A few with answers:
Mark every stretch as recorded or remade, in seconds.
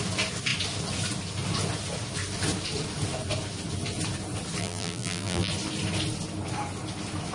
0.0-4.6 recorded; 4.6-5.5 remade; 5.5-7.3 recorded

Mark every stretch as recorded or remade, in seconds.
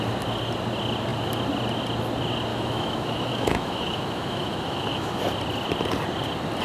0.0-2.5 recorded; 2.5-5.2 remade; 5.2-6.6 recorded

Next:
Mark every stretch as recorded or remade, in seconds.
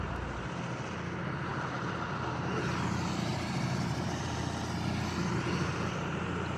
0.0-1.5 recorded; 1.5-2.7 remade; 2.7-3.3 recorded; 3.3-4.4 remade; 4.4-6.6 recorded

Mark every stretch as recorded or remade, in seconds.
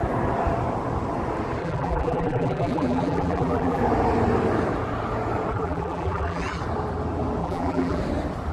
0.0-1.6 recorded; 1.6-3.8 remade; 3.8-5.5 recorded; 5.5-6.6 remade; 6.6-7.4 recorded; 7.4-8.0 remade; 8.0-8.5 recorded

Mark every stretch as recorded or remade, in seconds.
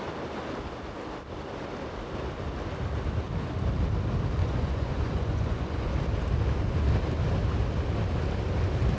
0.0-4.4 recorded; 4.4-5.9 remade; 5.9-9.0 recorded